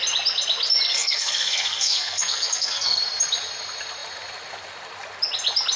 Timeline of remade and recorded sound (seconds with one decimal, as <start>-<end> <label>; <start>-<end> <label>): 0.0-0.9 recorded; 0.9-3.0 remade; 3.0-5.8 recorded